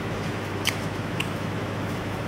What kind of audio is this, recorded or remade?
remade